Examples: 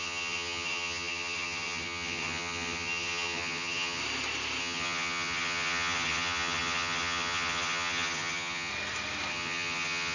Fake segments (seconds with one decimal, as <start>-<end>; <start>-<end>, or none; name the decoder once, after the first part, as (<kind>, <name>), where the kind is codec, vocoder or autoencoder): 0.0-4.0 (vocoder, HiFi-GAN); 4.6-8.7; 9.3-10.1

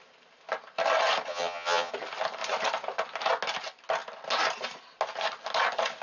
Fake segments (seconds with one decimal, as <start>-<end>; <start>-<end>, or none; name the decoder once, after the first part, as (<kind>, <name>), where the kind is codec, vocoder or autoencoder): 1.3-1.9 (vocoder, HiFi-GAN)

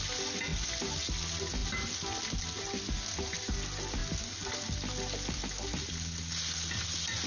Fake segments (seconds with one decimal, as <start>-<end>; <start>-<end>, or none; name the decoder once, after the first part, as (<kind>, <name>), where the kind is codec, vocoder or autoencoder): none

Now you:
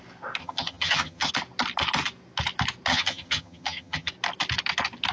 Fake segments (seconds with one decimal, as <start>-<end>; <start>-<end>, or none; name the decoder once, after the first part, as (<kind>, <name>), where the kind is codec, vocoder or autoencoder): 0.4-1.3 (vocoder, HiFi-GAN); 2.9-4.1